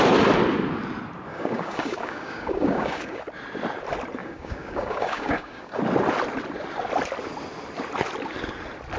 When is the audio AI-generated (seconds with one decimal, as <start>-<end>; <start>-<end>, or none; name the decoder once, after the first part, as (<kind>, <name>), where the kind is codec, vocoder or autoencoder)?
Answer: 1.3-3.2 (codec, DAC); 4.2-5.8